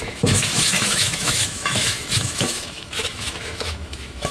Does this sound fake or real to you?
fake